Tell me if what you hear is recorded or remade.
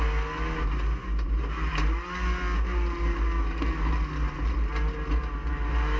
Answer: recorded